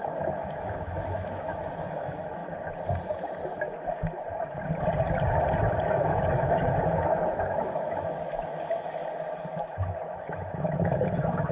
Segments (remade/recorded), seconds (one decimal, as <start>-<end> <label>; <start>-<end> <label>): 0.0-2.4 remade; 2.4-5.9 recorded; 5.9-9.0 remade; 9.0-9.6 recorded; 9.6-11.5 remade